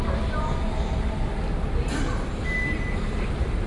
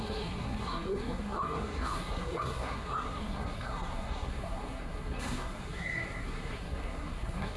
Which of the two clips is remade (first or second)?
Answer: second